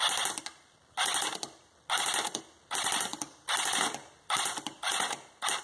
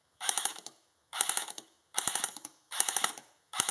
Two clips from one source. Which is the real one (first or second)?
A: first